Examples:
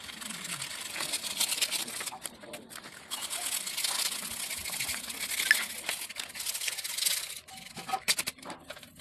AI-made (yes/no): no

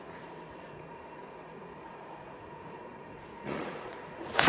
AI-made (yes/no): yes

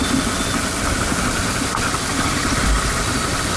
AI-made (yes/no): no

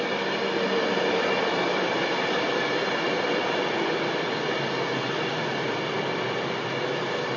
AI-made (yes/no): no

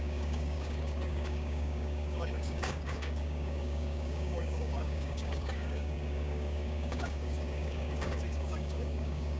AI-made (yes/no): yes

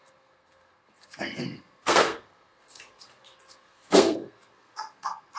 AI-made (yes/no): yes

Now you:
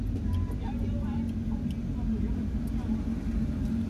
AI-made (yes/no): no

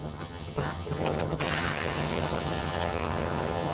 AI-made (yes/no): yes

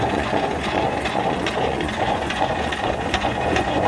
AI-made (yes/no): yes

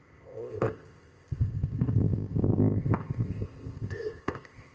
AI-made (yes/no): yes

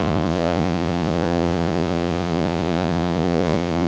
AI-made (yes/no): yes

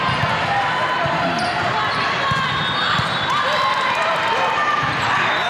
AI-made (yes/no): no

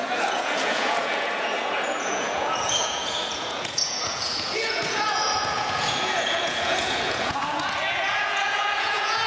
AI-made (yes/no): yes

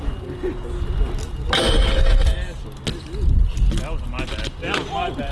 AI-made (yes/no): no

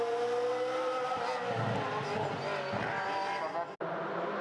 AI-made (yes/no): no